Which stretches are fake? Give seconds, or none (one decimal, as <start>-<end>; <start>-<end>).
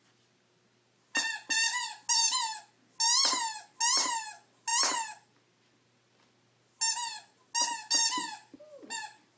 none